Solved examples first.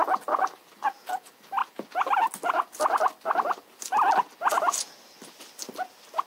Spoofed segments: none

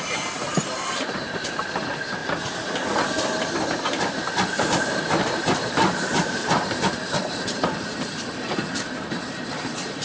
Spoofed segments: 0.0-2.2 (vocoder, BigVGAN v2); 4.6-10.0